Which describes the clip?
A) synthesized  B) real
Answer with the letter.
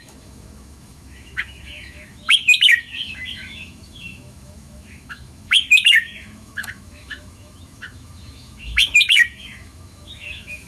A